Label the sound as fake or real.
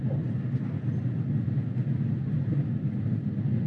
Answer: real